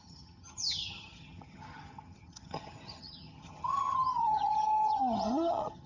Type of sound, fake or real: fake